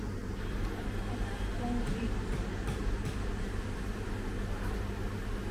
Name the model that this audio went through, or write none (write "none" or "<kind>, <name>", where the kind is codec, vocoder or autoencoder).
none